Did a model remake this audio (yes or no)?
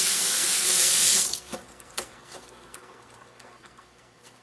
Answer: yes